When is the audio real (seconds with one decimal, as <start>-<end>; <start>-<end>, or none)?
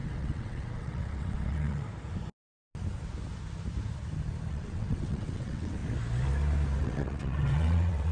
1.9-4.5; 5.8-6.8